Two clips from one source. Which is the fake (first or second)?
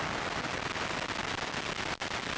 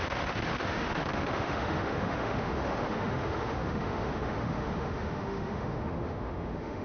second